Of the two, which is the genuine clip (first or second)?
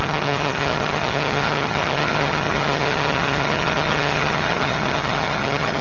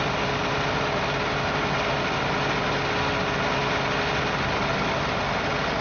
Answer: second